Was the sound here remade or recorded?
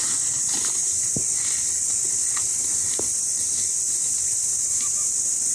recorded